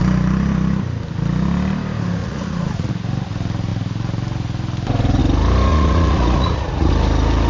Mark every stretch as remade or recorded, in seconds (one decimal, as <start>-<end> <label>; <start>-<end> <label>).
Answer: 0.0-2.2 recorded; 2.2-2.9 remade; 2.9-5.7 recorded; 5.7-6.9 remade; 6.9-7.5 recorded